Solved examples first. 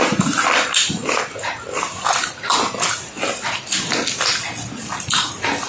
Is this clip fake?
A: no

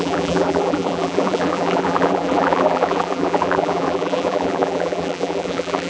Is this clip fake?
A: yes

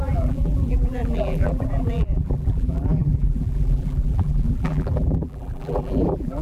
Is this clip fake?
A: yes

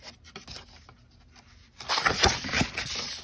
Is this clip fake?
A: no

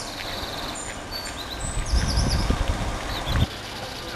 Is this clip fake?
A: no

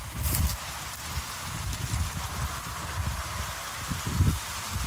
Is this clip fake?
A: no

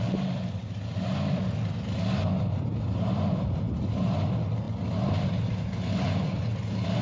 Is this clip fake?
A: no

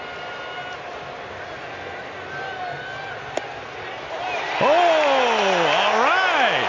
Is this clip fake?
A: no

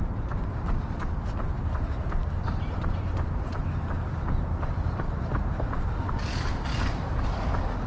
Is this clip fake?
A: no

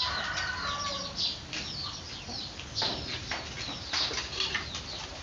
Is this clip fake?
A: no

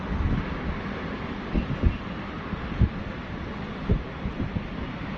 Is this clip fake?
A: no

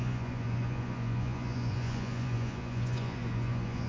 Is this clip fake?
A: yes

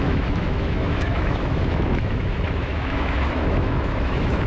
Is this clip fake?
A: yes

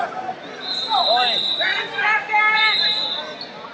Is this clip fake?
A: no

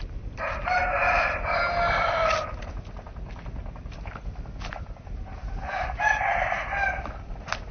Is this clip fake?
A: no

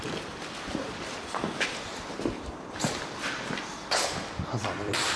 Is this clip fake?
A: yes